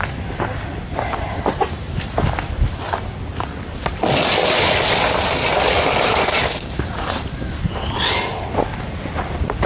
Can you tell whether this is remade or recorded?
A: recorded